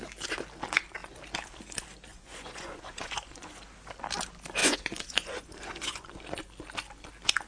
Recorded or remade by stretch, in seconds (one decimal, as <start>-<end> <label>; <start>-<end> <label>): 0.0-2.1 recorded; 2.1-3.6 remade; 3.6-4.6 recorded; 4.6-6.1 remade; 6.1-7.5 recorded